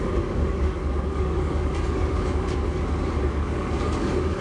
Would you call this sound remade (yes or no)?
yes